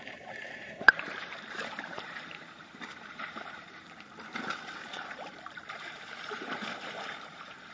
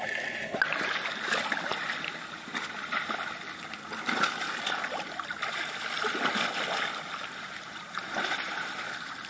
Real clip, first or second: second